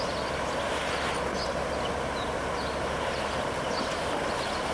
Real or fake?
real